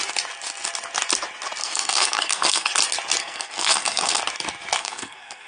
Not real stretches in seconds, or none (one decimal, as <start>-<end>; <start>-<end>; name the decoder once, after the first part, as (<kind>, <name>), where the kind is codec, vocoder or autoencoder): 1.6-2.7 (codec, SNAC); 3.2-4.2; 4.8-5.5